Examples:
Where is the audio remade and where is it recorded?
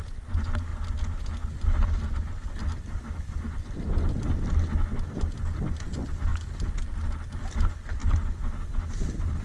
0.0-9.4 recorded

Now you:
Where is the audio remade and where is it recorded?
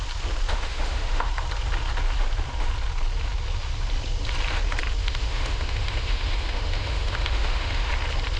0.0-0.5 recorded; 0.5-1.3 remade; 1.3-5.0 recorded; 5.0-7.9 remade; 7.9-8.4 recorded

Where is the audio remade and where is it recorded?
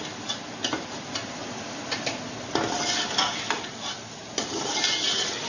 0.0-5.5 recorded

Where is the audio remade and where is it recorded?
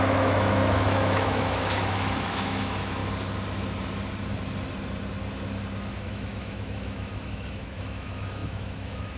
0.0-3.0 remade; 3.0-5.9 recorded; 5.9-9.2 remade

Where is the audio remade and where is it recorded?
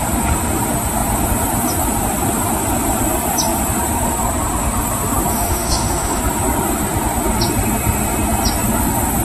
0.0-5.3 recorded; 5.3-6.2 remade; 6.2-9.2 recorded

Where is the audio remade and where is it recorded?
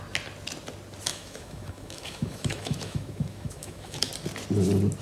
0.0-1.1 recorded; 1.1-4.1 remade; 4.1-5.0 recorded